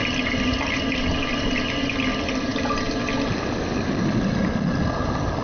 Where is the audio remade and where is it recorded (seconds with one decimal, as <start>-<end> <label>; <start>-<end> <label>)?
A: 0.0-5.4 recorded